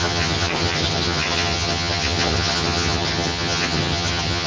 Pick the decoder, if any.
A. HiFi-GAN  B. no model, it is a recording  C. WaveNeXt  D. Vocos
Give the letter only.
A